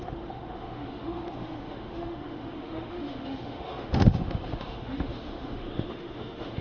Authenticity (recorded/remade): remade